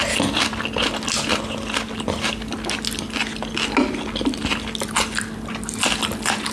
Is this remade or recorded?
recorded